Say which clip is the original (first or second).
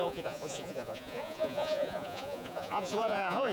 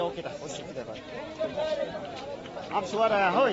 second